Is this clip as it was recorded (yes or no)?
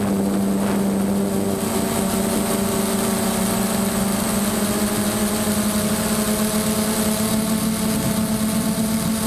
yes